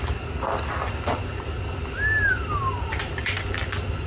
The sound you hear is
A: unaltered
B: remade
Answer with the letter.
A